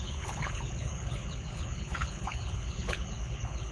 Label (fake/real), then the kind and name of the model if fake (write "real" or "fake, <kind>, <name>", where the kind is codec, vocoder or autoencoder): fake, codec, HILCodec